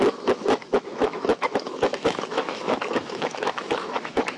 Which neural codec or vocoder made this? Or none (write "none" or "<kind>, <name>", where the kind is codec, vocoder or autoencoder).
autoencoder, DAC-VAE